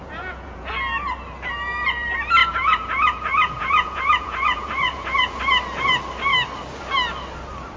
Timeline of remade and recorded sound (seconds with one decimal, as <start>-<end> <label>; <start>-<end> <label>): 0.0-0.7 remade; 0.7-2.4 recorded; 2.4-5.4 remade; 5.4-7.8 recorded